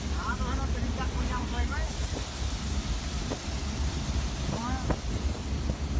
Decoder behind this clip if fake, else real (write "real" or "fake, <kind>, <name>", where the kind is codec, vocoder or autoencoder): real